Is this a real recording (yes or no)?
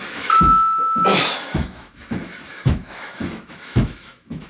no